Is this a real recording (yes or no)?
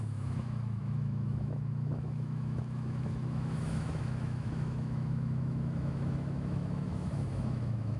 no